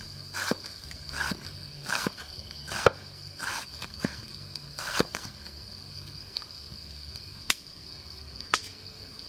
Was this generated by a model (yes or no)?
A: yes